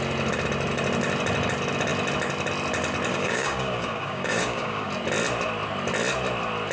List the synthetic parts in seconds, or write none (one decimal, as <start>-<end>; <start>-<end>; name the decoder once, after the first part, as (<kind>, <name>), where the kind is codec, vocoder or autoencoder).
3.1-4.9 (codec, DAC)